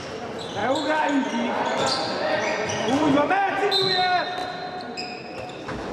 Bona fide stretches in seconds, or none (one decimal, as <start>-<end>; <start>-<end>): 0.0-5.9